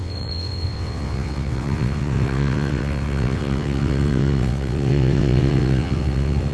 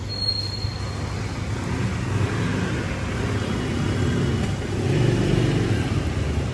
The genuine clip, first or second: second